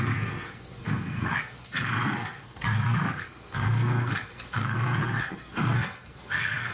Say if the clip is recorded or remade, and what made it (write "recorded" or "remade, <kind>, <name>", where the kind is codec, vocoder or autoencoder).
remade, codec, SNAC